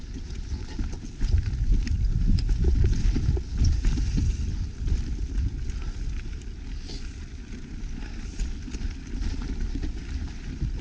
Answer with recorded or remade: recorded